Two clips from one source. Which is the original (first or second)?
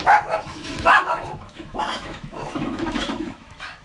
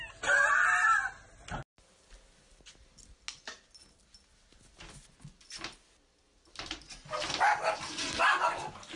second